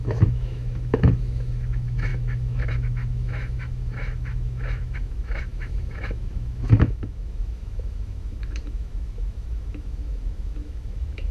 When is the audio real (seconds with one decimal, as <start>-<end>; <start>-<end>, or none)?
none